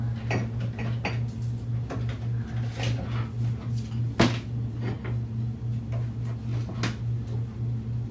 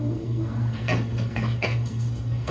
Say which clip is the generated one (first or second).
second